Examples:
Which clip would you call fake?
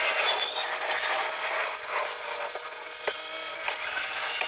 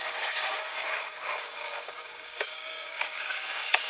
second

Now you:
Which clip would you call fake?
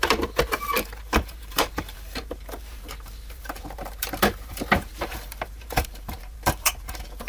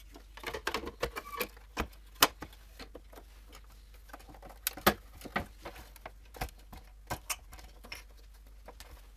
first